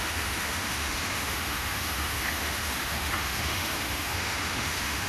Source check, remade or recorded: remade